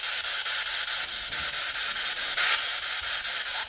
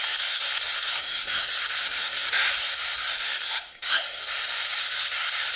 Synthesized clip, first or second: second